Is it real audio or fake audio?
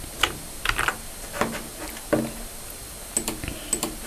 real